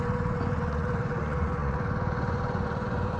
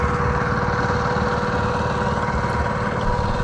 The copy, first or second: first